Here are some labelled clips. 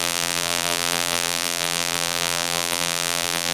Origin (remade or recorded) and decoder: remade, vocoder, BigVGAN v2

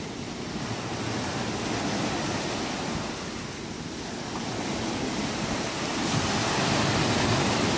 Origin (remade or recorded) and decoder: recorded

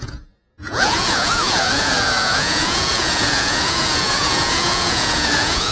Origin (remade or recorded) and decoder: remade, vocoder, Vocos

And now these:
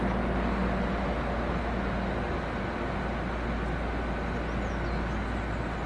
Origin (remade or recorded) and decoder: recorded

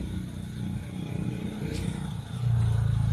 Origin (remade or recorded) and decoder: recorded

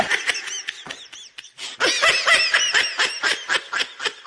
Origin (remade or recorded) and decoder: recorded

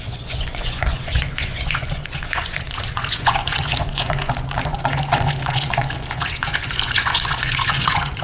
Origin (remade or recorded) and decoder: remade, vocoder, Vocos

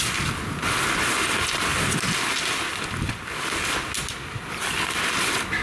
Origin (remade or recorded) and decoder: recorded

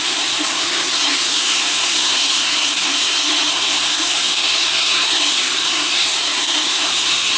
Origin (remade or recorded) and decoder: remade, codec, SNAC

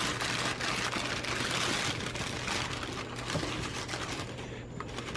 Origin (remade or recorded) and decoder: recorded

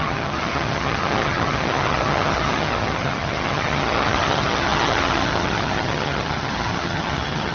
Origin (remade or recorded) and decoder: remade, vocoder, HiFi-GAN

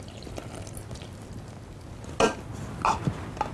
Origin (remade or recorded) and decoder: recorded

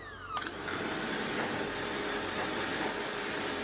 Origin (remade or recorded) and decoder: recorded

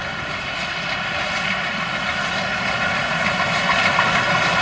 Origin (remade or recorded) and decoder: recorded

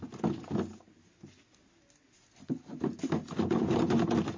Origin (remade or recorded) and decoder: recorded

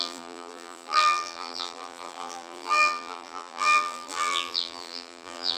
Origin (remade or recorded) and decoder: remade, vocoder, BigVGAN v2